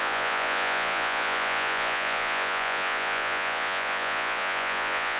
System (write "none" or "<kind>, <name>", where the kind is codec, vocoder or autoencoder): vocoder, Vocos